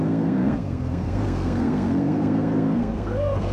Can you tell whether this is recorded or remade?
remade